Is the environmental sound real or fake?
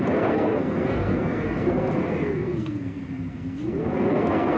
fake